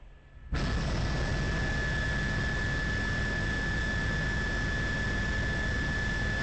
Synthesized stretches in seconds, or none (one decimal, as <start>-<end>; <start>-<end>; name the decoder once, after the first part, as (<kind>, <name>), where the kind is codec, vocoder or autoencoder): none